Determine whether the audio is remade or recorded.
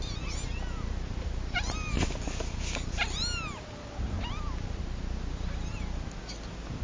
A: recorded